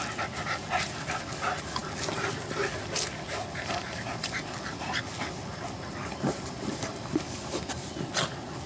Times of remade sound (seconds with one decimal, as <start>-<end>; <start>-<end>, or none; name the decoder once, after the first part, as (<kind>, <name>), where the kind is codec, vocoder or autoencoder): none